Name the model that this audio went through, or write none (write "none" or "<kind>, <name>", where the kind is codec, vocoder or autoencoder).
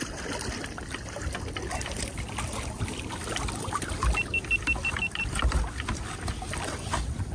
none